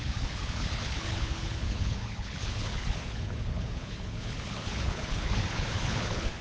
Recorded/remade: remade